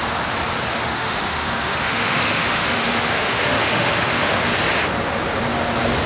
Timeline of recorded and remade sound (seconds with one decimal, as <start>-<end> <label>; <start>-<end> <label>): 0.0-0.7 recorded; 0.7-4.4 remade; 4.4-6.1 recorded